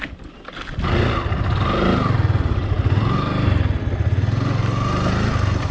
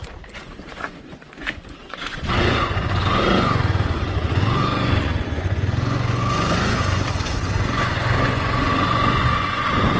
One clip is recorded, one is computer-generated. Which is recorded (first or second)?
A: first